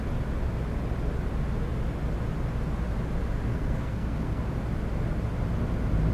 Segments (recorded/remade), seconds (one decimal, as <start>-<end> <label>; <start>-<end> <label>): 0.0-3.5 recorded; 3.5-4.4 remade; 4.4-6.1 recorded